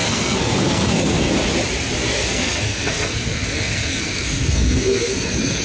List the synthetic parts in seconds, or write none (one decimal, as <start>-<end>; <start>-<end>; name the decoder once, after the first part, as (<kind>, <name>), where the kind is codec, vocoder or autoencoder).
0.0-1.3 (codec, SNAC); 2.0-5.6